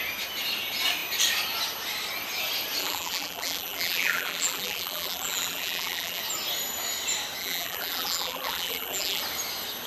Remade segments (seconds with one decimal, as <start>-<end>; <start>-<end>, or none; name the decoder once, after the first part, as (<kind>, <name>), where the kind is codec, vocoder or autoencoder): 2.8-6.2 (vocoder, BigVGAN v2); 7.4-9.2